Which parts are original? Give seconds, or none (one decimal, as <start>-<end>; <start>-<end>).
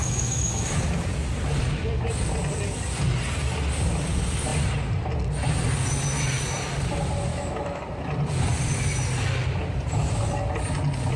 0.8-7.3; 7.8-11.2